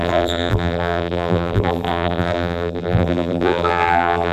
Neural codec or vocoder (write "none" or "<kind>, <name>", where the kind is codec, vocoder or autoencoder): vocoder, BigVGAN v2